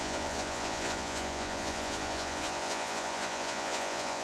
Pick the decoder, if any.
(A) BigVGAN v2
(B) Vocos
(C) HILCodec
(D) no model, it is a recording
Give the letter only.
B